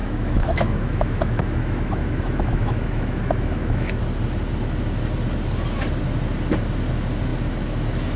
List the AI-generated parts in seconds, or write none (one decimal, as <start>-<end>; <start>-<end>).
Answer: 0.0-4.0